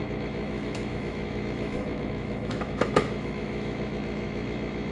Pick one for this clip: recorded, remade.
remade